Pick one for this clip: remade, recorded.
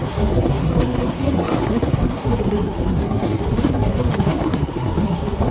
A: remade